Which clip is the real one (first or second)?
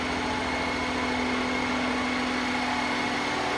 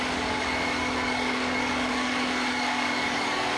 first